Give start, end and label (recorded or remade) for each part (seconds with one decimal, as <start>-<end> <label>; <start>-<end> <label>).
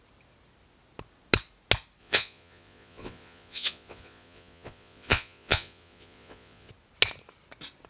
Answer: 0.0-2.0 recorded; 2.0-6.7 remade; 6.7-7.9 recorded